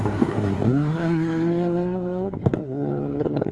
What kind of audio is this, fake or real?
fake